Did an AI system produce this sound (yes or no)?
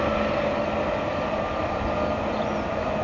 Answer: no